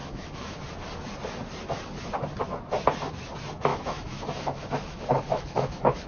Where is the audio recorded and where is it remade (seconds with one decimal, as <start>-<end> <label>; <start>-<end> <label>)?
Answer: 0.0-0.6 remade; 0.6-3.7 recorded; 3.7-6.1 remade